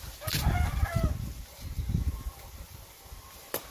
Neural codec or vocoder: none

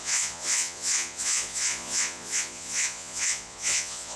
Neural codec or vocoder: vocoder, Vocos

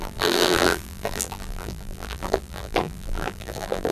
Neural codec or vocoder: vocoder, BigVGAN v2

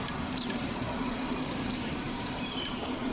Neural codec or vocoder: vocoder, BigVGAN v2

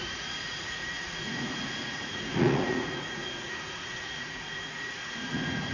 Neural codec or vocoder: vocoder, Vocos